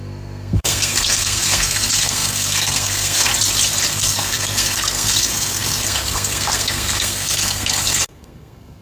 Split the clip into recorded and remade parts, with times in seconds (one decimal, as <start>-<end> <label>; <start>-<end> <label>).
0.0-3.3 remade; 3.3-3.9 recorded; 3.9-8.8 remade